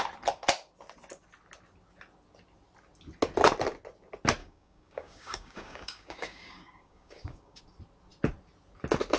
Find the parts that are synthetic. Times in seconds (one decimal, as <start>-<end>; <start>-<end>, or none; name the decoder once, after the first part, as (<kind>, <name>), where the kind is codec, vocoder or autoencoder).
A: 4.4-7.6 (codec, DAC)